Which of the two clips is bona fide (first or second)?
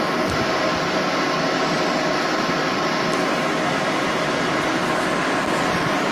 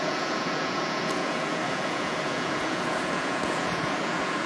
first